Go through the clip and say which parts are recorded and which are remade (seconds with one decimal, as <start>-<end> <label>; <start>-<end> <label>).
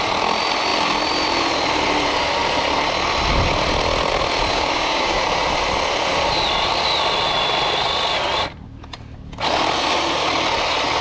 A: 0.0-4.5 recorded; 4.5-5.2 remade; 5.2-11.0 recorded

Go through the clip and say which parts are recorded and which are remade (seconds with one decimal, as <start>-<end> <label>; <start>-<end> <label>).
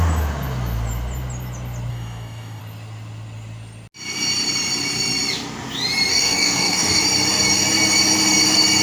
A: 0.0-1.9 recorded; 1.9-2.6 remade; 2.6-6.1 recorded; 6.1-7.0 remade; 7.0-8.8 recorded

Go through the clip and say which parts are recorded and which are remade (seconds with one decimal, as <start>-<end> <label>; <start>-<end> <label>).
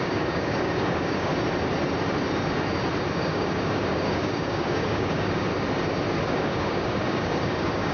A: 0.0-1.3 remade; 1.3-3.2 recorded; 3.2-5.5 remade; 5.5-6.3 recorded; 6.3-7.9 remade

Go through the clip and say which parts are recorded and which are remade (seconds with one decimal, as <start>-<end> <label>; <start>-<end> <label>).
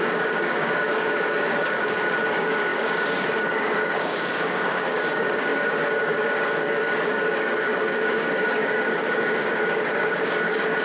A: 0.0-10.8 remade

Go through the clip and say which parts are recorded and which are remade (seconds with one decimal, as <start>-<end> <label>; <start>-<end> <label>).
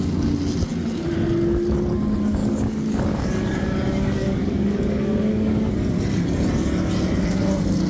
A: 0.0-2.4 recorded; 2.4-5.7 remade; 5.7-7.9 recorded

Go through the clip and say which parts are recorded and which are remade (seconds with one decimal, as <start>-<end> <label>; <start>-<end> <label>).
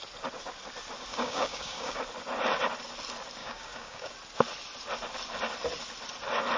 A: 0.0-1.1 recorded; 1.1-2.0 remade; 2.0-3.4 recorded; 3.4-4.1 remade; 4.1-6.6 recorded